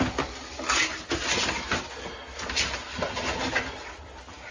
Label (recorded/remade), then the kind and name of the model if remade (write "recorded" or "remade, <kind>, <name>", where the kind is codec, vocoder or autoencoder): recorded